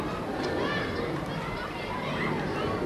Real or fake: real